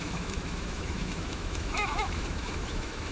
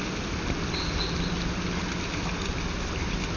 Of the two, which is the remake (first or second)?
first